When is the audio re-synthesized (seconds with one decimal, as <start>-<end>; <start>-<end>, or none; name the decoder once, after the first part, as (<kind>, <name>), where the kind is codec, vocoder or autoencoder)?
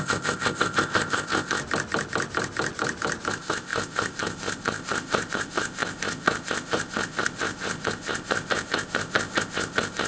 0.0-1.6 (codec, ZipCodec); 3.3-10.1